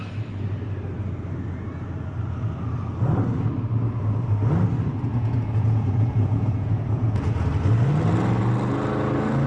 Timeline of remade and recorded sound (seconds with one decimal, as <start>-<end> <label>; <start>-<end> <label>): 0.0-5.1 recorded; 5.1-7.5 remade; 7.5-9.5 recorded